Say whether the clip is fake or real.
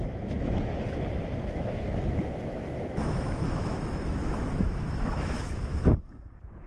fake